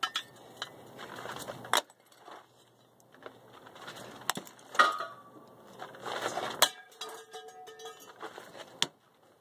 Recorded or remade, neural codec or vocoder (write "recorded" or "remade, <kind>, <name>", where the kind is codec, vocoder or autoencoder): recorded